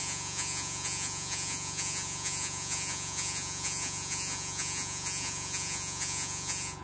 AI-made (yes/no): yes